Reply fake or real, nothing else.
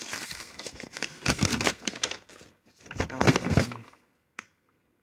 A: fake